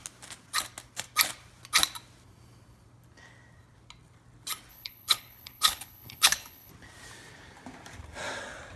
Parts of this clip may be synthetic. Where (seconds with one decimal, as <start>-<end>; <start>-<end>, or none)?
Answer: 4.7-6.7

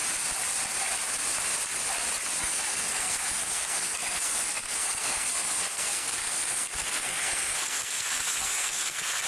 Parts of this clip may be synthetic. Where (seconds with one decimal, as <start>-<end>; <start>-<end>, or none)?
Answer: 2.4-9.3

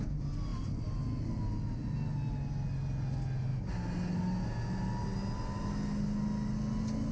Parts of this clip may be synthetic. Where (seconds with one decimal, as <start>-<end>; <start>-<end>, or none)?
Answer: none

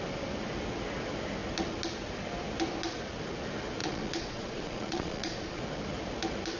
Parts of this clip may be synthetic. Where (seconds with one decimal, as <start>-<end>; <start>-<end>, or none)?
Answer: 3.8-5.6

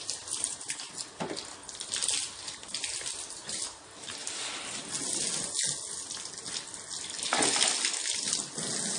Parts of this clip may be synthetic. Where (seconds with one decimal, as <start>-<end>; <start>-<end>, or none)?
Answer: none

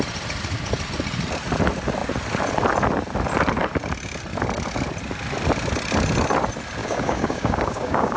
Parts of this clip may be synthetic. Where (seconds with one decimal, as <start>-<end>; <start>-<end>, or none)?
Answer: 6.8-8.2